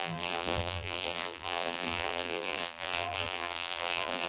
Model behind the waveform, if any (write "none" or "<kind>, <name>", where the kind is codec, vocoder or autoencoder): vocoder, BigVGAN v2